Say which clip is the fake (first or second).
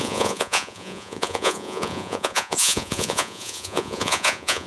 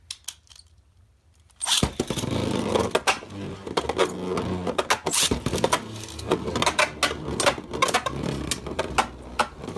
first